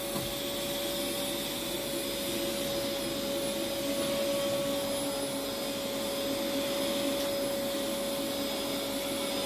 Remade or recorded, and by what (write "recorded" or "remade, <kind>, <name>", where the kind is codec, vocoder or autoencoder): recorded